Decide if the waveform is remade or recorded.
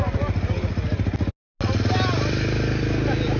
recorded